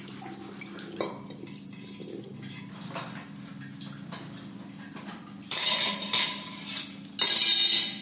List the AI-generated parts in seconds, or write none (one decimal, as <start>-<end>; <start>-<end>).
none